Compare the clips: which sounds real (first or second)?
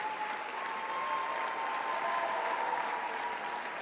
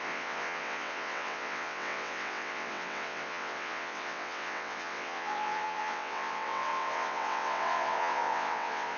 first